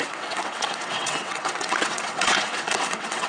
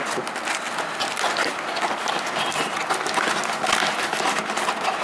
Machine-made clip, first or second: first